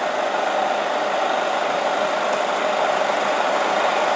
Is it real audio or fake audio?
real